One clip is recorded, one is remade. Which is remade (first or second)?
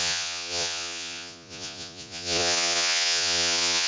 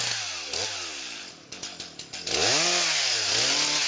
first